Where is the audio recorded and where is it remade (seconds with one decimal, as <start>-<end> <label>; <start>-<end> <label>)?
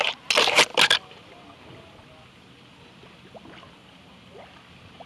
0.0-5.1 recorded